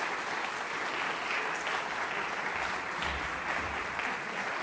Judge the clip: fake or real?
real